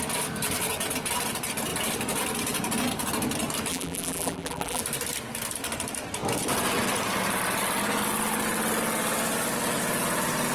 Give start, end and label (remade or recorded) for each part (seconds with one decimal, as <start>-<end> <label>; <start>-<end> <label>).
0.0-3.7 recorded; 3.7-4.8 remade; 4.8-10.5 recorded